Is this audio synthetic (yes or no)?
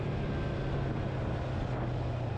no